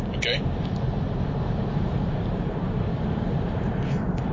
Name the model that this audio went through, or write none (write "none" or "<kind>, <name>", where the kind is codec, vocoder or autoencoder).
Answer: vocoder, BigVGAN v2